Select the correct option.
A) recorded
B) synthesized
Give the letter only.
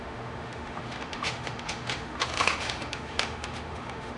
B